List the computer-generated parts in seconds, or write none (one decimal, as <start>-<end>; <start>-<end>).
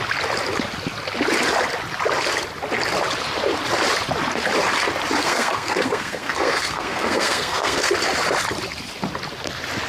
5.2-7.9